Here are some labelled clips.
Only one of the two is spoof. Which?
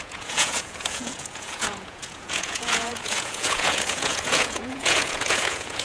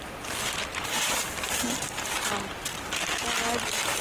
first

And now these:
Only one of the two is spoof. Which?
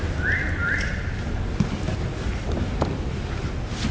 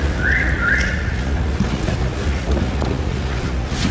second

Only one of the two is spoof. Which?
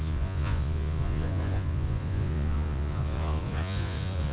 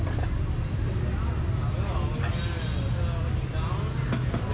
first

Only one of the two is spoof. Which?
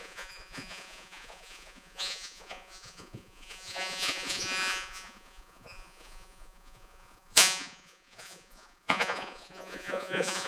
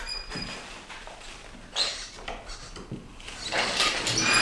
first